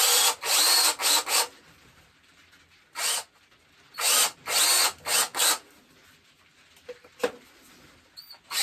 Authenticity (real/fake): real